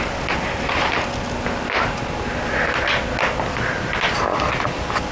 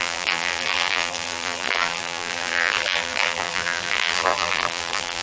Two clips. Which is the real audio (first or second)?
first